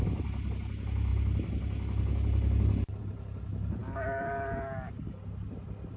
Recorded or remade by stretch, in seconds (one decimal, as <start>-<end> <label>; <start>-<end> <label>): 0.0-3.8 recorded; 3.8-5.2 remade; 5.2-6.0 recorded